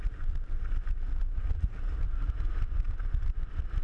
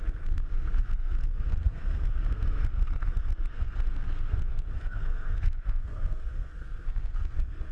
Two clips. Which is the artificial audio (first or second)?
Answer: second